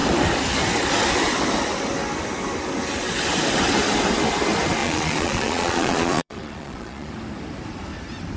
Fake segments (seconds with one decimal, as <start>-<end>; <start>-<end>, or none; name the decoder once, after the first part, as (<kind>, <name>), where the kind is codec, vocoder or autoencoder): 4.8-7.1 (vocoder, Vocos)